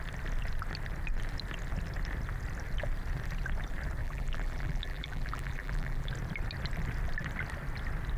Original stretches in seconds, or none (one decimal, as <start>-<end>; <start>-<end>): 0.0-4.0; 6.1-8.2